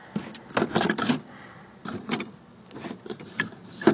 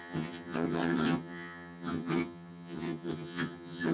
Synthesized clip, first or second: second